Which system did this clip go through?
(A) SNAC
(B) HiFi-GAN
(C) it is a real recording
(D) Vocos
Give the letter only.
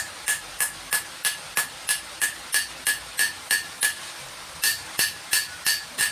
C